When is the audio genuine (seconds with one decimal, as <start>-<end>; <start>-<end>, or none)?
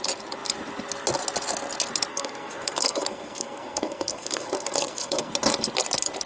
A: 0.0-2.1; 5.3-6.3